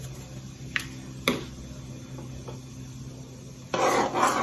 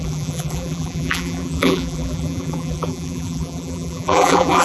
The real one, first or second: first